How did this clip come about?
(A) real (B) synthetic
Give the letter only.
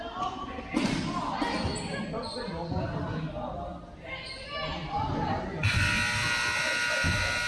A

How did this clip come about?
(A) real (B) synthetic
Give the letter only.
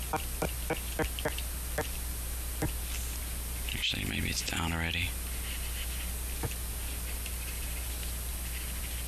A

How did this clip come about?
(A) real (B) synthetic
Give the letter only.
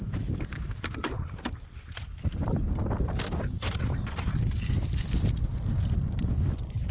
B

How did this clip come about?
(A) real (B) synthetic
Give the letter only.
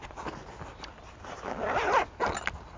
A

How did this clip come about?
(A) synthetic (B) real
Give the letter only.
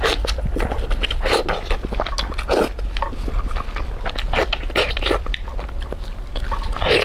B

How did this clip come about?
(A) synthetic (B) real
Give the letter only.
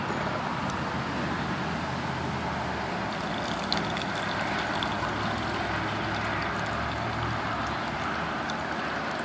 B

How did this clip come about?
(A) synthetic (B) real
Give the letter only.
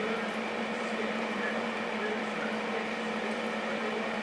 A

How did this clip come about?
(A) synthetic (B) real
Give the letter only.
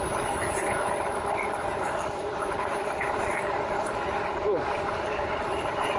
A